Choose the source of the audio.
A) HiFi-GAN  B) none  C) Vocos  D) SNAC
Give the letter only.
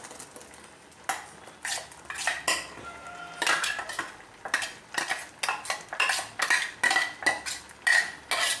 B